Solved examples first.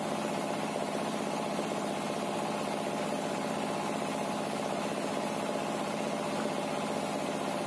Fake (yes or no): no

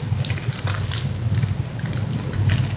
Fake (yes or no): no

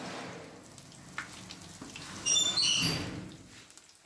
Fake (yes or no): no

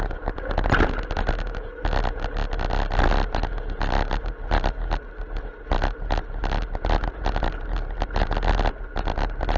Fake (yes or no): no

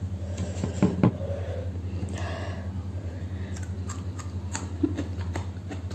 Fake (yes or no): no